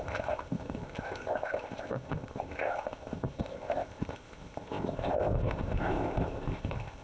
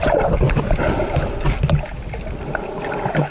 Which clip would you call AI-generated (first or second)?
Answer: first